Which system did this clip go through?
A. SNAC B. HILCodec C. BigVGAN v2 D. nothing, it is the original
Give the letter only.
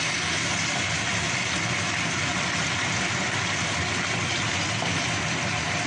D